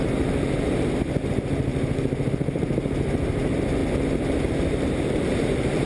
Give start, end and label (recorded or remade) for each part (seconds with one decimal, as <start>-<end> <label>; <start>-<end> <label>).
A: 0.0-1.7 remade; 1.7-2.3 recorded; 2.3-3.8 remade; 3.8-4.8 recorded; 4.8-5.9 remade